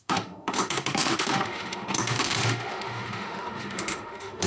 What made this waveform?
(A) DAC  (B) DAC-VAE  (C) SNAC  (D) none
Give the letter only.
B